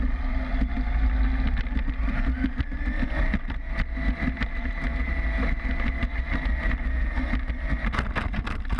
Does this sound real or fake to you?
real